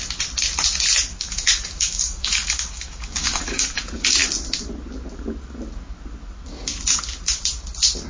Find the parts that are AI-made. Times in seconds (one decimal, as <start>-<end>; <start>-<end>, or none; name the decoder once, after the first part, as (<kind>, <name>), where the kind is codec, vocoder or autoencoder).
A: 1.1-3.8 (codec, DAC)